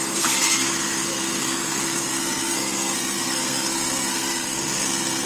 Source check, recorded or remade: remade